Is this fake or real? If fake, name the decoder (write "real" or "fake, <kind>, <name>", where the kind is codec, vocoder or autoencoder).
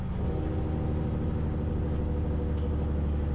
real